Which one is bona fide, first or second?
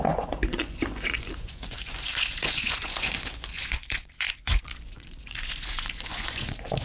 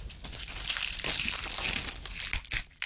second